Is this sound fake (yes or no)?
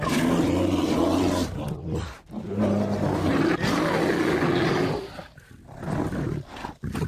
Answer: no